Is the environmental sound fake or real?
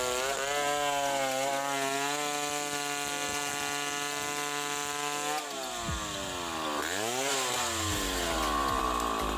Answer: real